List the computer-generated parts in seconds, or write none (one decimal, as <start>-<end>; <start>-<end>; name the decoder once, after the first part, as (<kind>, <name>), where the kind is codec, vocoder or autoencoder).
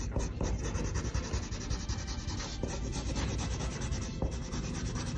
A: none